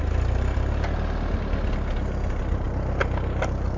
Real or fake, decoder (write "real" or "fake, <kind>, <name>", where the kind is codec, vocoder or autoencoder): real